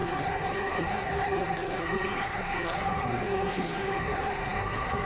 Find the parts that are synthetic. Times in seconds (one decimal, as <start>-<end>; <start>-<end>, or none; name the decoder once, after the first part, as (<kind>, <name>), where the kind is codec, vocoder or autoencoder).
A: 0.0-5.1 (codec, SNAC)